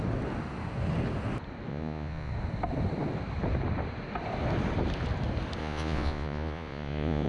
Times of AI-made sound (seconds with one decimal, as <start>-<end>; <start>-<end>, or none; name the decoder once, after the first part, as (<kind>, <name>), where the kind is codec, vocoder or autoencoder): 1.7-2.3 (vocoder, Vocos); 5.6-7.3

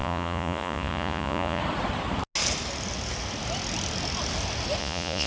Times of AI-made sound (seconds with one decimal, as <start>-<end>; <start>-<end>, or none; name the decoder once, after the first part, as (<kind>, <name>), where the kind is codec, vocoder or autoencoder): 0.0-1.6 (vocoder, Vocos); 4.8-5.3

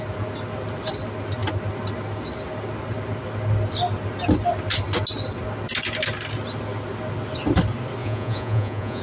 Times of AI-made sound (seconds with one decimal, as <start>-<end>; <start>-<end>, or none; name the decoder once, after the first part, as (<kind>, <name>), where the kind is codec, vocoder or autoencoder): 8.0-9.0 (vocoder, Vocos)

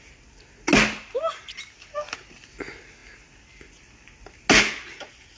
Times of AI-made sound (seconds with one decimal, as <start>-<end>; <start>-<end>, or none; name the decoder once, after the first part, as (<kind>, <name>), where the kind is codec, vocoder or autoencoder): none

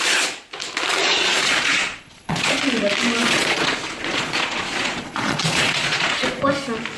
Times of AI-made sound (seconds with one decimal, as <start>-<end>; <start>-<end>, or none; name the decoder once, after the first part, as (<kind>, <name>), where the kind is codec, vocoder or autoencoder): 1.0-2.6 (vocoder, Vocos); 3.2-6.4

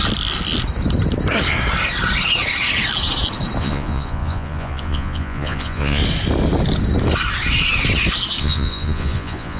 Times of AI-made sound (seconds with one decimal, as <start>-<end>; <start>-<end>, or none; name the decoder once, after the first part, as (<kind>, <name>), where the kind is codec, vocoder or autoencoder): 3.6-6.0 (vocoder, Vocos); 8.4-9.6